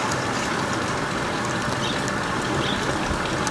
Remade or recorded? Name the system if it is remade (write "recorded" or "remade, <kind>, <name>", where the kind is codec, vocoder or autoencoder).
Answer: recorded